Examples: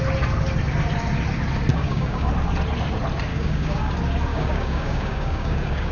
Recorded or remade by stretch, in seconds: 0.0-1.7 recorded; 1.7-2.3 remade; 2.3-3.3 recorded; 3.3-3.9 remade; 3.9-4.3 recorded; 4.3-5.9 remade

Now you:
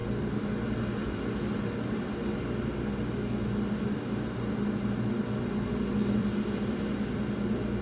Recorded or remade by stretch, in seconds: 0.0-6.2 recorded; 6.2-6.8 remade; 6.8-7.8 recorded

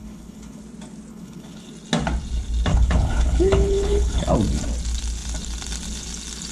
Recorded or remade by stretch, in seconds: 0.0-0.6 remade; 0.6-1.1 recorded; 1.1-1.7 remade; 1.7-2.7 recorded; 2.7-4.3 remade; 4.3-6.5 recorded

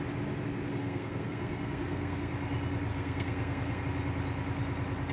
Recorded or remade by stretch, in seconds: 0.0-0.8 recorded; 0.8-2.3 remade; 2.3-2.9 recorded; 2.9-3.8 remade; 3.8-5.1 recorded

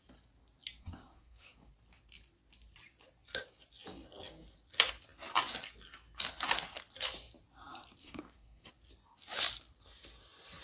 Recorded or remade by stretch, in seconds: 0.0-0.8 recorded; 0.8-1.7 remade; 1.7-8.0 recorded; 8.0-8.7 remade; 8.7-10.6 recorded

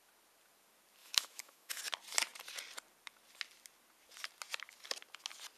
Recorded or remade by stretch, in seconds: 0.0-1.0 recorded; 1.0-1.8 remade; 1.8-5.6 recorded

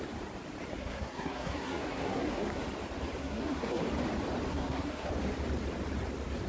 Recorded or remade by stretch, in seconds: 0.0-0.8 recorded; 0.8-2.6 remade; 2.6-3.2 recorded; 3.2-3.8 remade; 3.8-4.5 recorded; 4.5-5.1 remade; 5.1-6.5 recorded